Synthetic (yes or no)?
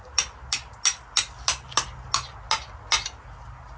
no